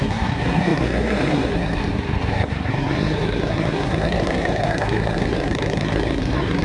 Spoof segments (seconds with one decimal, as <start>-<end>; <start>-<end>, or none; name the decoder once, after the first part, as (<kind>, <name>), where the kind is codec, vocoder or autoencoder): 0.0-6.6 (codec, SNAC)